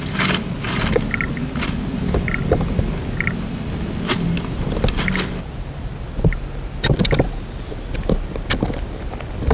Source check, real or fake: real